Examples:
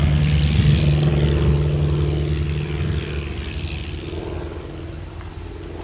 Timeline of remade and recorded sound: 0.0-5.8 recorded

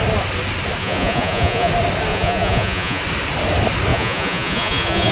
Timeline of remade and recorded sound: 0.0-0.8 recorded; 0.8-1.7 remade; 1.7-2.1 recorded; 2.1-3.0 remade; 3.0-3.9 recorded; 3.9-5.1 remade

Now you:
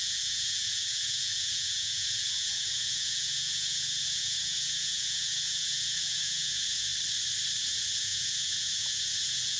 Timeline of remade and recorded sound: 0.0-6.9 remade; 6.9-7.6 recorded; 7.6-9.6 remade

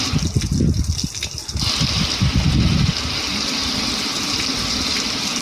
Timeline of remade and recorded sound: 0.0-5.4 recorded

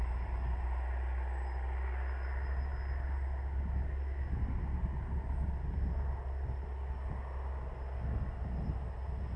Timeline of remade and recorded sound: 0.0-9.4 recorded

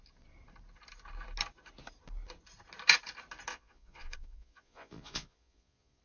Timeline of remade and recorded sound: 0.0-3.5 recorded; 3.5-6.0 remade